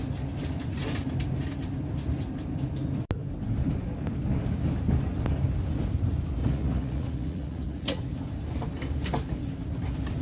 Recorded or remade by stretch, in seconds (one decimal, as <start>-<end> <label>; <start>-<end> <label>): 0.0-6.4 recorded; 6.4-8.0 remade; 8.0-10.2 recorded